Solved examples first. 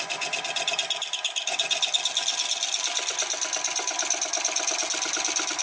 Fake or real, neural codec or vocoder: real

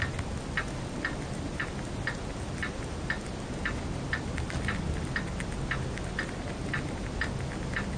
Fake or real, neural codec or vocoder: real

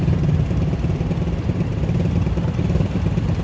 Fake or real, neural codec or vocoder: real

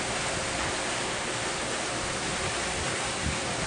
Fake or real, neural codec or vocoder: real